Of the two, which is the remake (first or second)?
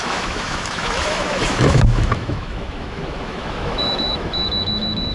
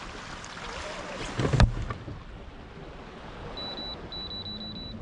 first